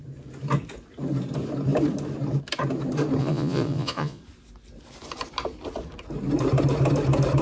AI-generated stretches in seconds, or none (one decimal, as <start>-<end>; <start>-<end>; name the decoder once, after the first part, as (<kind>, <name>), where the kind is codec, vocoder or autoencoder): 3.2-4.2 (vocoder, Vocos)